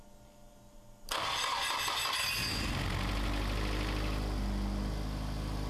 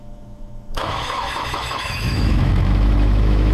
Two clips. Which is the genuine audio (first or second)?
first